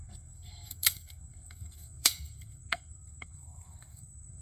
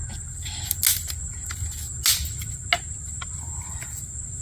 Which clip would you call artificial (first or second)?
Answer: first